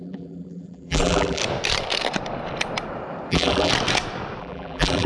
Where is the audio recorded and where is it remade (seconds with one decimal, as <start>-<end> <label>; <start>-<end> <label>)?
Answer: 0.0-1.4 remade; 1.4-3.3 recorded; 3.3-3.7 remade; 3.7-4.4 recorded; 4.4-5.1 remade